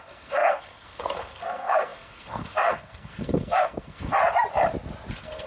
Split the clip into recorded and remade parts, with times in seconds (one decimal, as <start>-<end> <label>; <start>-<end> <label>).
0.0-4.1 remade; 4.1-5.1 recorded; 5.1-5.5 remade